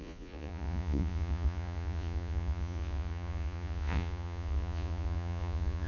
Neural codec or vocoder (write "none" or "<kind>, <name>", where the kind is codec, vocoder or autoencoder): vocoder, Vocos